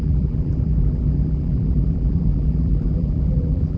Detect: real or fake fake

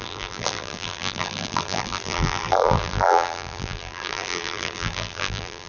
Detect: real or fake fake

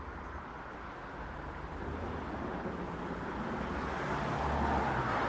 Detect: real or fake real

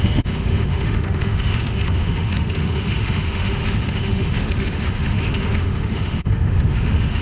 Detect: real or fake fake